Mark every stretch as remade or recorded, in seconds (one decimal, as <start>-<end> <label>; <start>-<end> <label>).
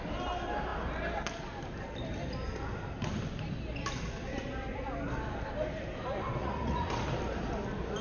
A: 0.0-6.4 recorded; 6.4-6.9 remade; 6.9-8.0 recorded